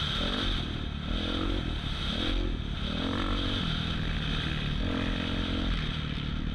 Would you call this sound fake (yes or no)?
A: no